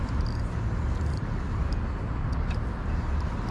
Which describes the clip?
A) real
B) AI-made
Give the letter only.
A